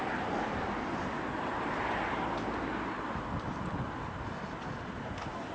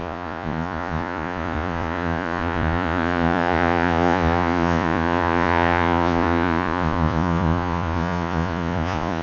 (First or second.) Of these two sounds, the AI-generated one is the second